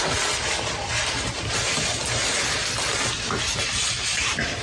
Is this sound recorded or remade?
recorded